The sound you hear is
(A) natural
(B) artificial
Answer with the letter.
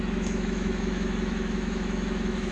B